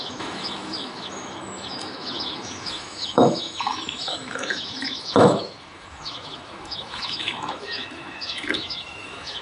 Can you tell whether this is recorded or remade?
remade